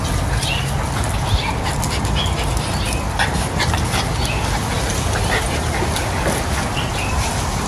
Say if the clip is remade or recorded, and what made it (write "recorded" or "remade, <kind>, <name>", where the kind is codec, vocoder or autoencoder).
recorded